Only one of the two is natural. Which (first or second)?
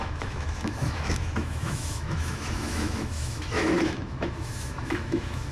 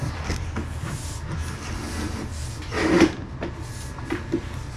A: second